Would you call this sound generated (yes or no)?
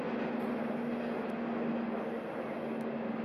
no